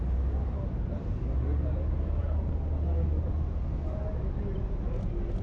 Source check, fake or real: real